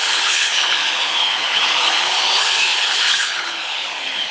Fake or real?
fake